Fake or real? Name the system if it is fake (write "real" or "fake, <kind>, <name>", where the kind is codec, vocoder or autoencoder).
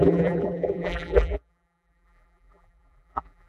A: fake, vocoder, BigVGAN v2